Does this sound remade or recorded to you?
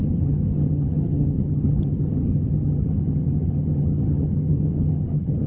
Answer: remade